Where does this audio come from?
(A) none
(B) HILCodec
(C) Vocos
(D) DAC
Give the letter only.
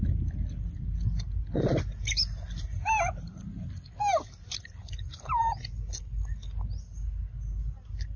A